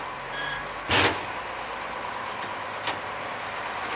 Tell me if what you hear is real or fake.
real